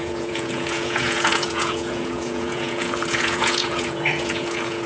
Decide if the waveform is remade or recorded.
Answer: remade